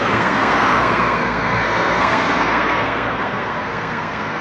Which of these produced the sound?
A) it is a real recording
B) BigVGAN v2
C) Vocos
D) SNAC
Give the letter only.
D